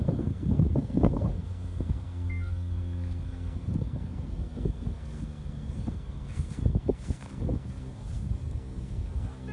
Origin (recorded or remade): remade